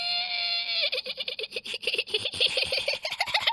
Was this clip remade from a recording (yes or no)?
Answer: no